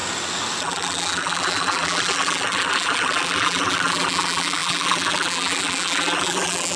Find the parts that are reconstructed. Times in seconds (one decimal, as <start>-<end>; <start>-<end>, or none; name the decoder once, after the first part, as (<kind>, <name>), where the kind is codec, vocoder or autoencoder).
0.6-6.8 (vocoder, BigVGAN v2)

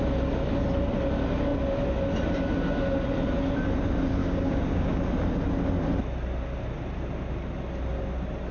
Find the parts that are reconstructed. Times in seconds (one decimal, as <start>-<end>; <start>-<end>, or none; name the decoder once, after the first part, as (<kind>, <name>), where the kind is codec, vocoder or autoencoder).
4.2-5.0 (codec, DAC)

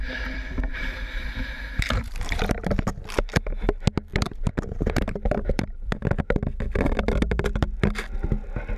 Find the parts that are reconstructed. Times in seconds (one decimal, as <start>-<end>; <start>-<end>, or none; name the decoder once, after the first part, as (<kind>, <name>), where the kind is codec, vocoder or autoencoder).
0.7-2.9 (vocoder, BigVGAN v2); 4.1-6.0

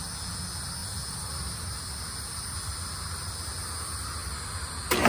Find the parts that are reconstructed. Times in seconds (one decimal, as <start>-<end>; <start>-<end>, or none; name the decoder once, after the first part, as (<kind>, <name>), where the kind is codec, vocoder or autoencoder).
0.8-3.3 (vocoder, BigVGAN v2); 4.2-5.1

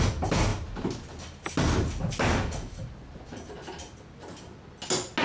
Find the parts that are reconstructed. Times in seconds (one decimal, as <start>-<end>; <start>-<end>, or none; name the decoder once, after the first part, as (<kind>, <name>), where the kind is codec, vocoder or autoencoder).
none